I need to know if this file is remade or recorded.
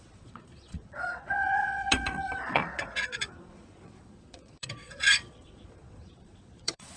remade